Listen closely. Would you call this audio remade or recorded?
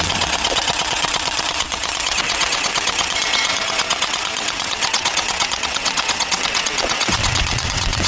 remade